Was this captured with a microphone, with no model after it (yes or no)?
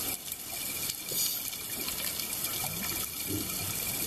yes